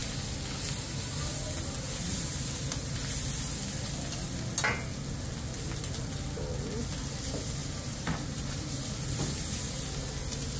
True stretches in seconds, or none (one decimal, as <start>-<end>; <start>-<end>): 0.0-7.6; 8.8-10.6